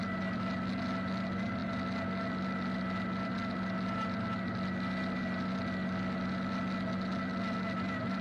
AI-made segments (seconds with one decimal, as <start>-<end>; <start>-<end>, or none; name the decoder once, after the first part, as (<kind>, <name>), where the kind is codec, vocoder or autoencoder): none